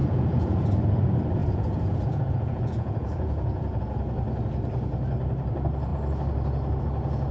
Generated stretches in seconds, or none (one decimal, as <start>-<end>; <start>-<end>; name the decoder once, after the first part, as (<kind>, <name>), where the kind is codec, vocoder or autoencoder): 0.0-0.6 (vocoder, Vocos); 1.4-3.8